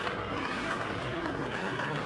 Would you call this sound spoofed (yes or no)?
yes